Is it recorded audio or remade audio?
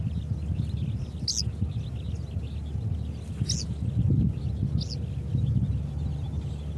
recorded